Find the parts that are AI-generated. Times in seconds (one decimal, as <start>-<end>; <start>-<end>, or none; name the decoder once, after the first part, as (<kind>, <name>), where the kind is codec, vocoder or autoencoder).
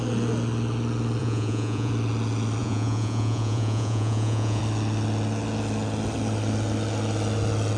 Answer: 1.2-1.9 (vocoder, Vocos); 2.6-4.6